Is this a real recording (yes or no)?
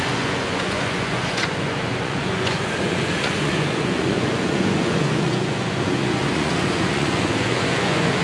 no